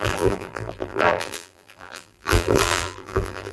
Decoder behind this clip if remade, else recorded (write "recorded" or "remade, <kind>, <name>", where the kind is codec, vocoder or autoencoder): remade, vocoder, BigVGAN v2